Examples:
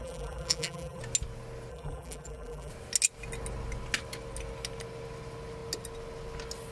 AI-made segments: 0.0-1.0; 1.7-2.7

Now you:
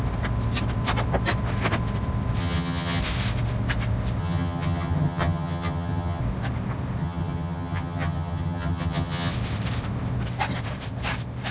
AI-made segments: 2.4-3.0; 4.2-6.2; 7.0-9.3

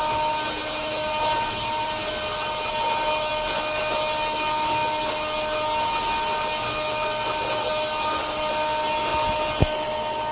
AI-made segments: 0.6-2.0

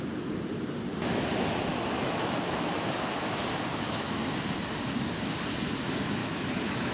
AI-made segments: 1.7-2.7; 3.7-4.4; 6.2-6.9

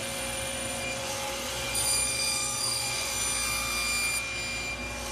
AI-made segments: 0.0-3.1

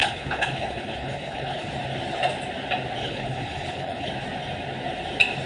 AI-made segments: 0.0-1.7; 3.0-4.1

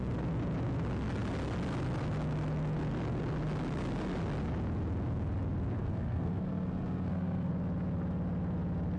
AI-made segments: 5.8-7.5